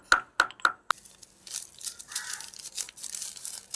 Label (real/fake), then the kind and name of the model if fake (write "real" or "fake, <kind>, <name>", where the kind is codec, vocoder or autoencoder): real